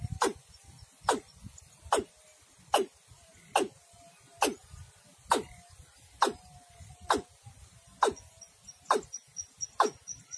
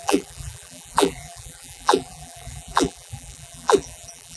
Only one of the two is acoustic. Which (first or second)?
first